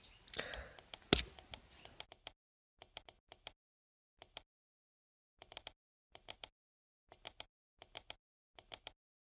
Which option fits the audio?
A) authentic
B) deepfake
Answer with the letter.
A